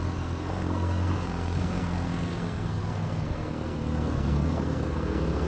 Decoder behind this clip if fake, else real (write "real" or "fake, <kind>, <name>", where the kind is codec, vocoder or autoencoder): fake, codec, SNAC